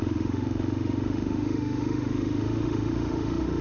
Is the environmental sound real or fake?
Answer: fake